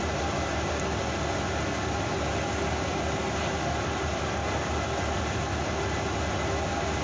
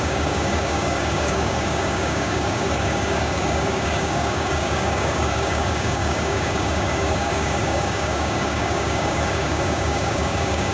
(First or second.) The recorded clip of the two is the first